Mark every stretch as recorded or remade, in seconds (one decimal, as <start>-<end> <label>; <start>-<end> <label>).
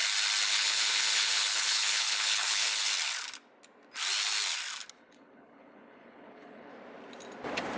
0.0-0.5 recorded; 0.5-2.9 remade; 2.9-4.9 recorded; 4.9-6.7 remade; 6.7-7.8 recorded